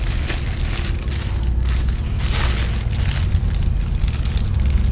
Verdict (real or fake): real